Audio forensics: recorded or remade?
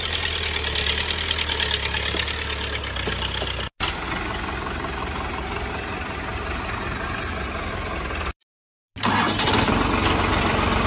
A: recorded